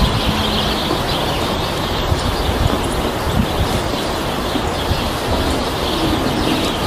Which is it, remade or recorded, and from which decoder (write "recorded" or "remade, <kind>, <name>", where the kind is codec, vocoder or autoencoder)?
recorded